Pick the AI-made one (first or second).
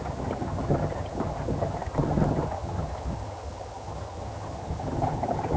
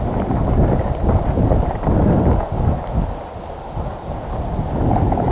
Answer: first